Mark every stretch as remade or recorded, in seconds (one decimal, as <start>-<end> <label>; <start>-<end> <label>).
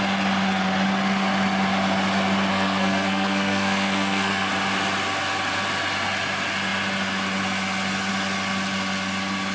0.0-2.5 recorded; 2.5-4.5 remade; 4.5-9.5 recorded